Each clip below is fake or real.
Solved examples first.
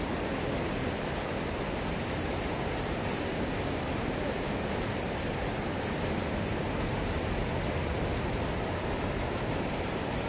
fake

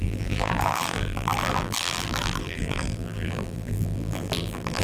fake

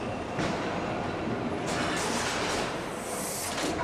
real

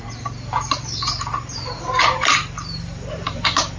fake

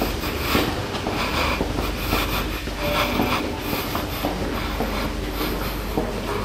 fake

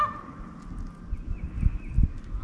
real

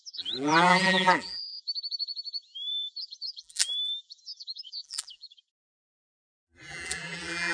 fake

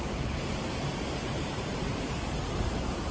fake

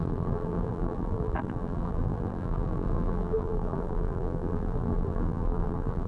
fake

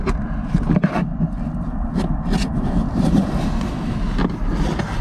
real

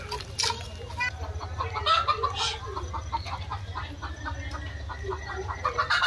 real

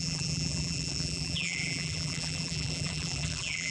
fake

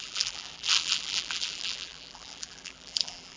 fake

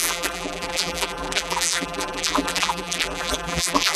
fake